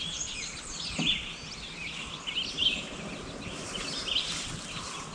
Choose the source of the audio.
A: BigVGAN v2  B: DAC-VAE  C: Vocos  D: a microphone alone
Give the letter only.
D